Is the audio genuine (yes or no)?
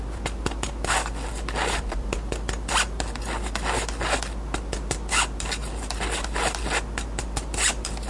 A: yes